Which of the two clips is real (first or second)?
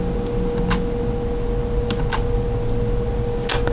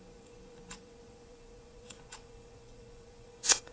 first